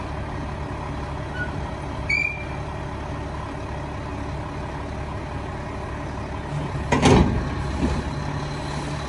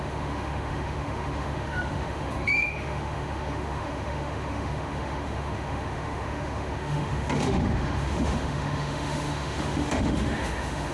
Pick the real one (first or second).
first